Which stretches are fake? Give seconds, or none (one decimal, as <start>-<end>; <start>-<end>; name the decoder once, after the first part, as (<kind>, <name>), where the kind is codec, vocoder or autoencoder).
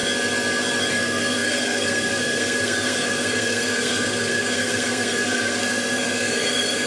0.9-6.9 (codec, SNAC)